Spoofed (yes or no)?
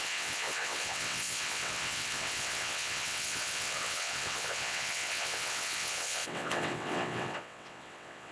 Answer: yes